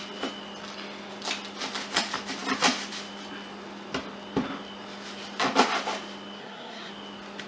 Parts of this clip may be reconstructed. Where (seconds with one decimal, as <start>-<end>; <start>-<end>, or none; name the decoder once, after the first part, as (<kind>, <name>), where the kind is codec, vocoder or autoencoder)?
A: 6.4-6.9 (codec, SNAC)